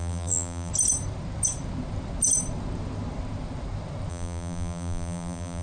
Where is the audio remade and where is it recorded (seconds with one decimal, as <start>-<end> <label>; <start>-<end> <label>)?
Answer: 0.0-0.7 remade; 0.7-4.1 recorded; 4.1-5.6 remade